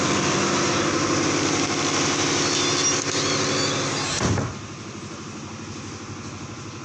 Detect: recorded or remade recorded